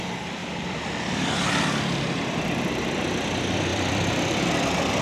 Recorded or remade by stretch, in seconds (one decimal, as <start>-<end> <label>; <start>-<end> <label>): 0.0-0.4 recorded; 0.4-2.7 remade; 2.7-3.7 recorded; 3.7-4.4 remade; 4.4-5.0 recorded

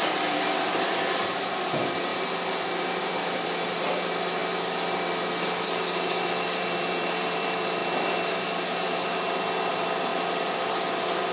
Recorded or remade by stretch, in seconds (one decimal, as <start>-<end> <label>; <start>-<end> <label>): 0.0-2.1 remade; 2.1-2.9 recorded; 2.9-4.4 remade; 4.4-6.2 recorded; 6.2-7.8 remade; 7.8-9.7 recorded; 9.7-10.1 remade; 10.1-10.7 recorded; 10.7-11.3 remade

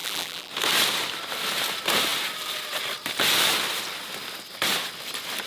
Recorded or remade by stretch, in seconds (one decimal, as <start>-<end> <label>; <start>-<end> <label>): 0.0-0.5 remade; 0.5-5.5 recorded

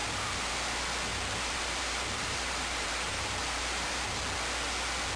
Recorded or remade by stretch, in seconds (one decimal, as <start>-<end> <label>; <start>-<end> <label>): 0.0-0.5 remade; 0.5-1.1 recorded; 1.1-4.2 remade; 4.2-5.2 recorded

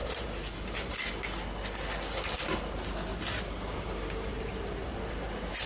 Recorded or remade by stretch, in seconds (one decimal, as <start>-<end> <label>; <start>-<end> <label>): 0.0-0.9 remade; 0.9-3.1 recorded; 3.1-3.8 remade; 3.8-4.3 recorded; 4.3-5.3 remade; 5.3-5.7 recorded

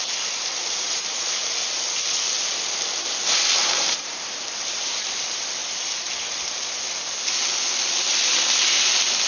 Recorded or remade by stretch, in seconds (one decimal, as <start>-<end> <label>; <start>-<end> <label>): 0.0-1.4 remade; 1.4-3.6 recorded; 3.6-5.6 remade; 5.6-9.3 recorded